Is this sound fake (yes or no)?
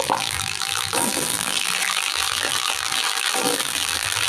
yes